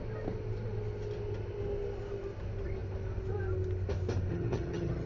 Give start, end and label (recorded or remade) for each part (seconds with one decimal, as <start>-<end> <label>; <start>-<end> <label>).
0.0-4.3 recorded; 4.3-5.1 remade